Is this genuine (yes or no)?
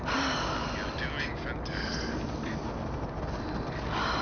yes